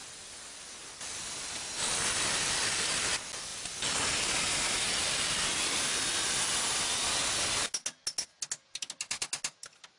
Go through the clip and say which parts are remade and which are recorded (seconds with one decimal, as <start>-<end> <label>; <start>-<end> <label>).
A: 0.0-10.0 recorded